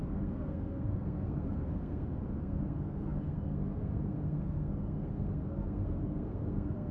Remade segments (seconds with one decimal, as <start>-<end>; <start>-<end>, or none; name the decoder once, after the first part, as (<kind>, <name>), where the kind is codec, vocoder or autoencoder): 0.0-6.9 (codec, SNAC)